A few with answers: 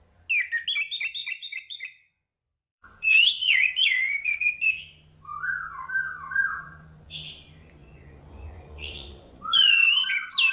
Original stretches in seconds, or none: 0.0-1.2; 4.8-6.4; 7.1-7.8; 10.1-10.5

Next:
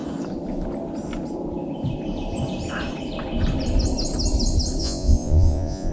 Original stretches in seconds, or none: 0.0-4.8